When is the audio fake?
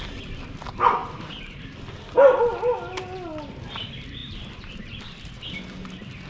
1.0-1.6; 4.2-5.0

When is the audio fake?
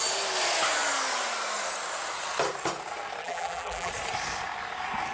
3.2-3.9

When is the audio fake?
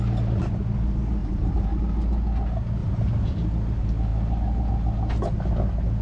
1.2-1.8; 2.8-3.5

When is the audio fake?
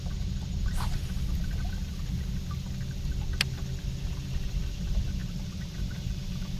5.2-6.6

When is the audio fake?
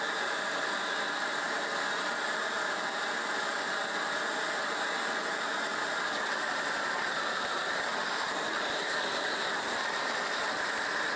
7.9-10.4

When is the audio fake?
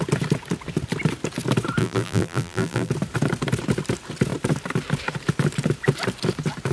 1.8-2.9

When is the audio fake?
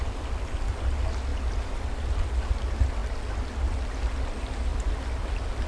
1.3-2.5; 4.7-5.3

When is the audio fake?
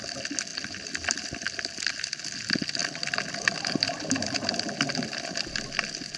0.5-2.2